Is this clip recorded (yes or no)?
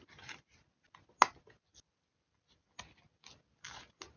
yes